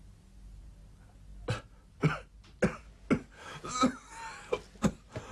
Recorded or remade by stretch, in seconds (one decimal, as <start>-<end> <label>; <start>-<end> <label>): 0.0-5.3 recorded